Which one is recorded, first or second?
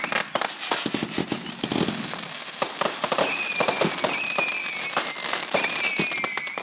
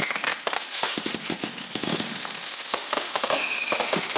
first